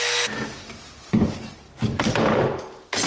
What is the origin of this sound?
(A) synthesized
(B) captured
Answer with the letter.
B